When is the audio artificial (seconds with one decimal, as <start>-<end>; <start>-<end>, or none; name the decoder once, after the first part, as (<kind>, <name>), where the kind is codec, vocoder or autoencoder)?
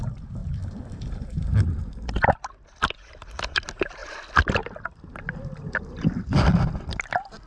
0.4-1.1 (vocoder, BigVGAN v2)